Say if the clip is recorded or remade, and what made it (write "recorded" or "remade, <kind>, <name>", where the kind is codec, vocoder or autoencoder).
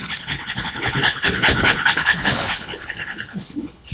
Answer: remade, codec, HILCodec